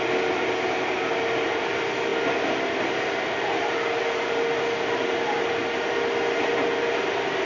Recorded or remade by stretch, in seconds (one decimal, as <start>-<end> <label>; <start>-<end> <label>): 0.0-7.5 recorded